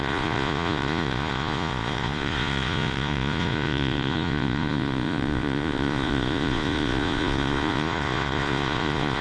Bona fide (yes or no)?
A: no